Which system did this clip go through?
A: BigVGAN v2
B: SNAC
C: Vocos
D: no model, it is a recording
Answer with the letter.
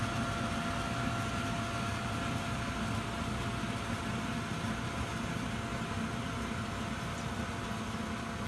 D